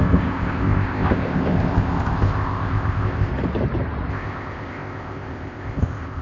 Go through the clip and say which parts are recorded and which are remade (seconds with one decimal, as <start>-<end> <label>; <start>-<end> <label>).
0.0-3.3 remade; 3.3-4.1 recorded; 4.1-6.2 remade